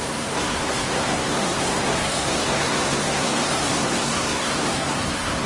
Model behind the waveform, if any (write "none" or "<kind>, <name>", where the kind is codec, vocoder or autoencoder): codec, SNAC